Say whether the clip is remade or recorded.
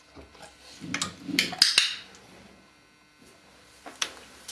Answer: recorded